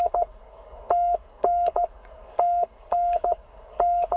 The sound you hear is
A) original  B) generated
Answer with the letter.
B